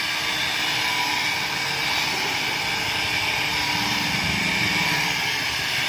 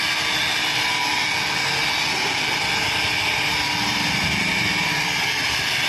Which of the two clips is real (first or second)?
second